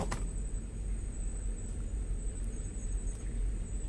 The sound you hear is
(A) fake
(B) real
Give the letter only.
B